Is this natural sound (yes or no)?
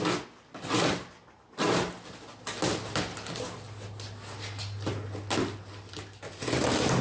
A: yes